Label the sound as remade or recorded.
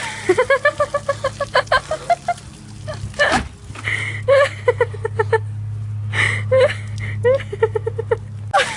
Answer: recorded